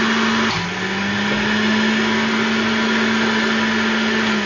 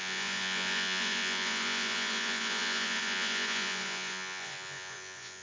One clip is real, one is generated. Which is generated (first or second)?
second